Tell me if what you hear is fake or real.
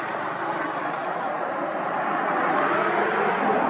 real